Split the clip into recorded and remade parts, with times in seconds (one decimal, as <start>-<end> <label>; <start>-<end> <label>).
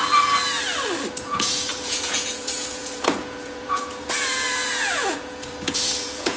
0.0-1.2 recorded; 1.2-6.4 remade